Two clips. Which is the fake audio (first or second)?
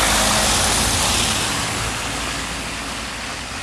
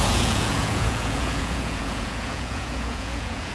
second